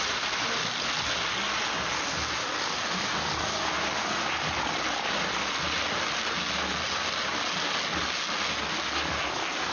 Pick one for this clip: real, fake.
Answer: real